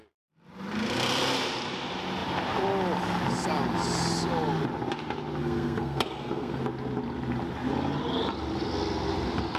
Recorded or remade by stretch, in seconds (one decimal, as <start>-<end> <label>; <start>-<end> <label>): 0.0-5.4 recorded; 5.4-6.6 remade; 6.6-9.6 recorded